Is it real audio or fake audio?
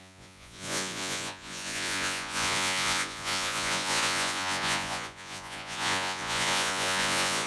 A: fake